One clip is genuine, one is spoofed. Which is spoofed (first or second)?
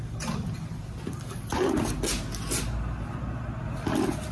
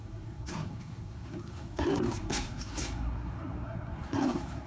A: second